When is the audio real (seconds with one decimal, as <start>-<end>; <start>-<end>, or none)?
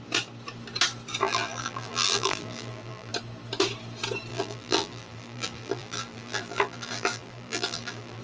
0.0-1.2; 3.1-4.3